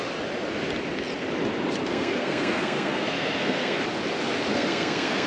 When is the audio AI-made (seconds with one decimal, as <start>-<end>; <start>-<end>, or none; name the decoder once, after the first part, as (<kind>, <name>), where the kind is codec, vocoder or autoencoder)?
1.8-3.8 (codec, SNAC); 4.5-5.3